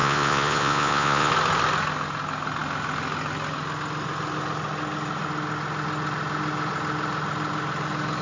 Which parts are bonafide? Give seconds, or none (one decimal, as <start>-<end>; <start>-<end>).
1.3-8.2